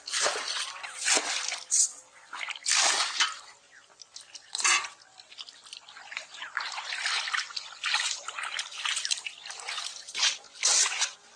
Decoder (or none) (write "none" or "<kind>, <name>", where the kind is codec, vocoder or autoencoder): none